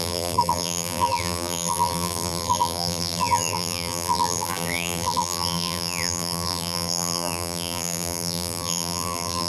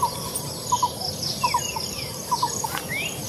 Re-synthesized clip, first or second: first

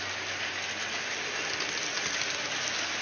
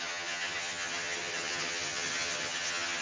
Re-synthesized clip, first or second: second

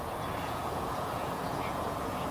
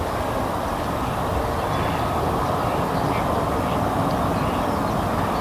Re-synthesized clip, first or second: first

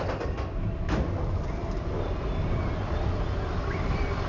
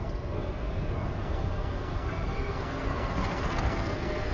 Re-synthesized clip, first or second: second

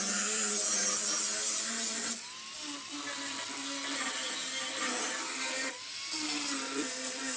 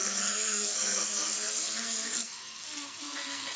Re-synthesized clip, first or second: second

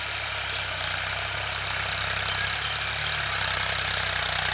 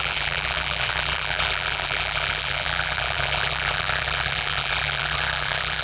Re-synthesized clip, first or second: second